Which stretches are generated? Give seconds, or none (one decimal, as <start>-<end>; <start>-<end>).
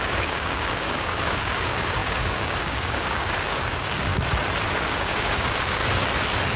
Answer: 0.0-4.1; 4.9-5.8